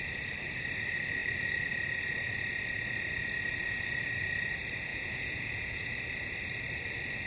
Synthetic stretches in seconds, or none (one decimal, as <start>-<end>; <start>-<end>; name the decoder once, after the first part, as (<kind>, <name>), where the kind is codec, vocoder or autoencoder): 4.9-5.9 (vocoder, Vocos)